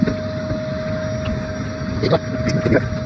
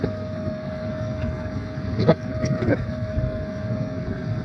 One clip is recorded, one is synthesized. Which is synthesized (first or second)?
second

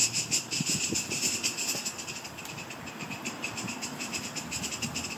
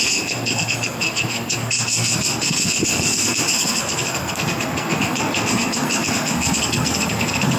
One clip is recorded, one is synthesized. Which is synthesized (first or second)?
second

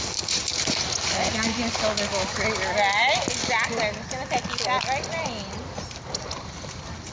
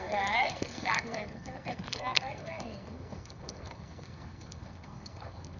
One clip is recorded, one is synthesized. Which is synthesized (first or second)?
second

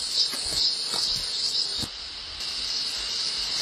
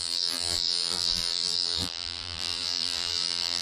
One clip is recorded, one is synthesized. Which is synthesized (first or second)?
second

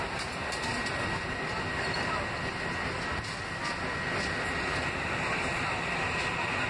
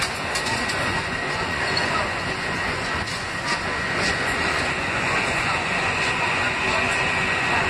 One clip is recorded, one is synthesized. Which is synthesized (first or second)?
second